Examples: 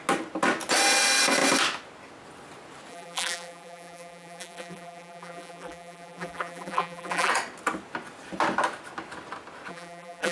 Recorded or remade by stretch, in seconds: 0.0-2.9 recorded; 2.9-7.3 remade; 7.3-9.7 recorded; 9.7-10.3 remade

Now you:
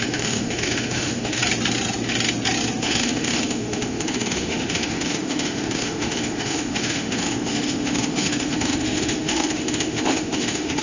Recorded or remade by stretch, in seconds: 0.0-1.4 remade; 1.4-2.8 recorded; 2.8-10.8 remade

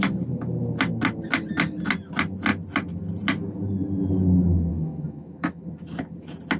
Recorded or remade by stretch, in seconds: 0.0-4.7 recorded; 4.7-5.6 remade; 5.6-6.6 recorded

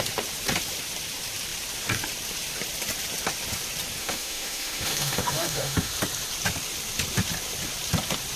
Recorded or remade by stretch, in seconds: 0.0-4.0 recorded; 4.0-5.9 remade; 5.9-8.4 recorded